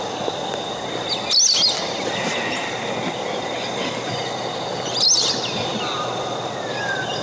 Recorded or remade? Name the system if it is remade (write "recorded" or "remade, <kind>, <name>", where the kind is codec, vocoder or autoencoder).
recorded